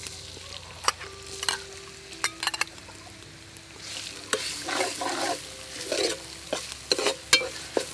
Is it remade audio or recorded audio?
recorded